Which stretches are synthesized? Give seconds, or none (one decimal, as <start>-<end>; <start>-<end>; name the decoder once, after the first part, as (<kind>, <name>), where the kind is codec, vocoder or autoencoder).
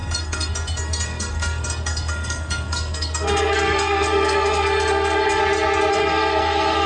0.0-5.4 (codec, SNAC); 5.9-6.9